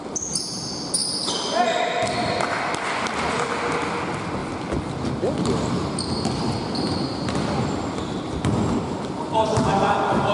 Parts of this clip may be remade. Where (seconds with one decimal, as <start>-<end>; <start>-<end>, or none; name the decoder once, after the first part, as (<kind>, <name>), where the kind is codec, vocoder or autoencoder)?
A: none